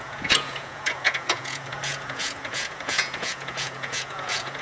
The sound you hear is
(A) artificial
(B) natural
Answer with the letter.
A